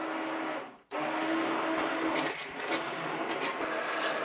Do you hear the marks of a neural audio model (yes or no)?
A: no